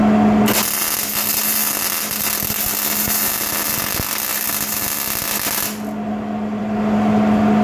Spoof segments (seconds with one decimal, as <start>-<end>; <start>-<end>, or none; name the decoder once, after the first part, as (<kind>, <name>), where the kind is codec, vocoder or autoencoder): none